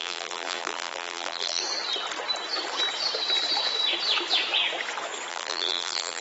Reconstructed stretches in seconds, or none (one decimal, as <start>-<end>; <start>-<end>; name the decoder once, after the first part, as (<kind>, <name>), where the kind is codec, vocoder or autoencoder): 0.0-1.6 (vocoder, BigVGAN v2); 5.3-6.2